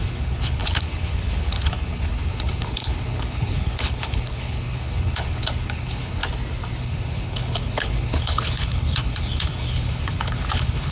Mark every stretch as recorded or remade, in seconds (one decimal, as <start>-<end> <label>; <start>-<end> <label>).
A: 0.0-6.2 remade; 6.2-6.8 recorded; 6.8-10.9 remade